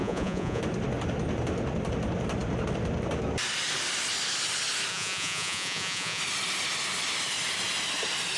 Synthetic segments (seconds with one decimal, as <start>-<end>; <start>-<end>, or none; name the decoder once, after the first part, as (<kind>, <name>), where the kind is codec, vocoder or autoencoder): 0.0-0.6 (vocoder, Vocos); 4.9-6.2